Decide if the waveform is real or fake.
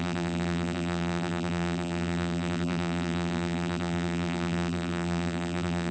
fake